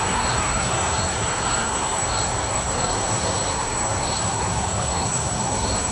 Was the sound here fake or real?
fake